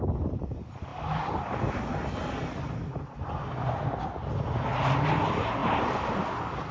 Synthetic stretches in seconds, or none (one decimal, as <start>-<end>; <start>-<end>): none